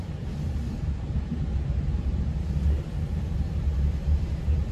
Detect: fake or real fake